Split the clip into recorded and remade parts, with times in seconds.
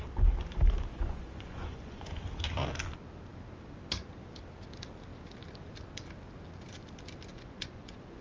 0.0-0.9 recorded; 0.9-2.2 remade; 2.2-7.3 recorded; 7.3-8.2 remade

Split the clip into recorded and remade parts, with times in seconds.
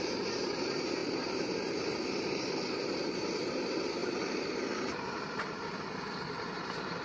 0.0-7.0 remade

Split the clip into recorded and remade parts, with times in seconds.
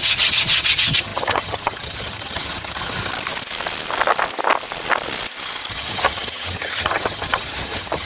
0.0-3.1 remade; 3.1-5.7 recorded; 5.7-8.1 remade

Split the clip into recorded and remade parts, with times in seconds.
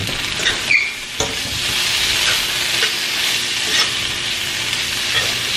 0.0-5.6 recorded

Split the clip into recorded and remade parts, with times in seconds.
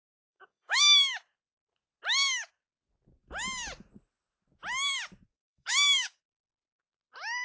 0.0-0.8 remade; 0.8-5.3 recorded; 5.3-6.2 remade; 6.2-7.4 recorded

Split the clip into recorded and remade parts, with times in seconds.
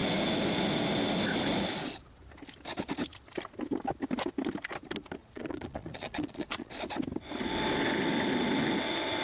0.0-5.2 recorded; 5.2-6.7 remade; 6.7-9.2 recorded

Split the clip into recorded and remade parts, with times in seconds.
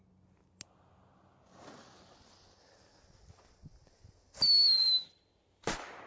0.0-6.1 recorded